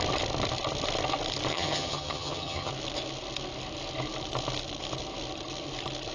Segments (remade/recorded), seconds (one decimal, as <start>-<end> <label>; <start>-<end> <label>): 0.0-1.5 recorded; 1.5-2.7 remade; 2.7-6.1 recorded